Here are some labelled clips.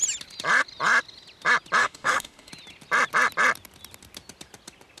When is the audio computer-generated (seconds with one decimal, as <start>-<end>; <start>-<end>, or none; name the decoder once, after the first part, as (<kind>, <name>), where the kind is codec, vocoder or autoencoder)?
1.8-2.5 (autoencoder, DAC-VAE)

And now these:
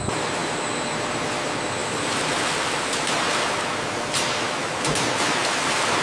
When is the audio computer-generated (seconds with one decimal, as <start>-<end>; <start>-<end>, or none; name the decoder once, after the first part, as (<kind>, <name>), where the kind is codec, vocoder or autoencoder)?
none

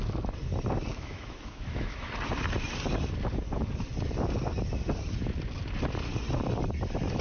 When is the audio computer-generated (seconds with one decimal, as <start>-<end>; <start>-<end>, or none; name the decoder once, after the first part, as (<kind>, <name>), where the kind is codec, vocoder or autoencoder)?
0.9-2.1 (autoencoder, DAC-VAE)

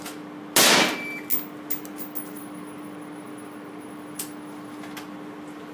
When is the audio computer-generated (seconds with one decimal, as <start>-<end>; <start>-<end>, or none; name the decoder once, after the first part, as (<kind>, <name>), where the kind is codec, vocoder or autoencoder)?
none

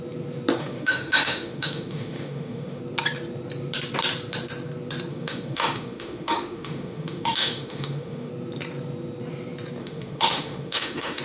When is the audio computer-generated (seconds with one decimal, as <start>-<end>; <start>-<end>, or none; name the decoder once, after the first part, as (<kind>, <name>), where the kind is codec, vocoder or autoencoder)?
0.6-2.8 (autoencoder, DAC-VAE); 5.1-8.3; 9.8-11.2

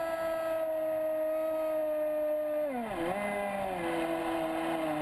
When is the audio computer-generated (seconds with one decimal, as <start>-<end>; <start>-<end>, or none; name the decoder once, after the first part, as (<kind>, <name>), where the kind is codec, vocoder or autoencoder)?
none

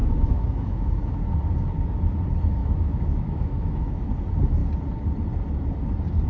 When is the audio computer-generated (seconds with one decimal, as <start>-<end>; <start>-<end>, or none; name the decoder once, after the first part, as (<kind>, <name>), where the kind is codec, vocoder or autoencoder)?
0.0-1.0 (autoencoder, DAC-VAE); 2.6-4.1